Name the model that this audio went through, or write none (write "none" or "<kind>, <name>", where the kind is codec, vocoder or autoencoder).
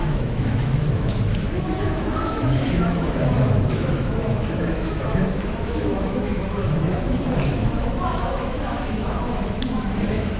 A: autoencoder, DAC-VAE